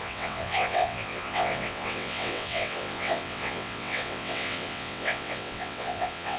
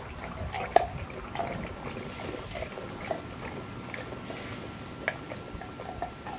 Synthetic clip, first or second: first